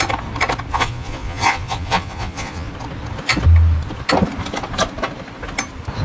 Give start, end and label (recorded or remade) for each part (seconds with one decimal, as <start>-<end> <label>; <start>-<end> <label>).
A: 0.0-0.7 recorded; 0.7-2.7 remade; 2.7-6.0 recorded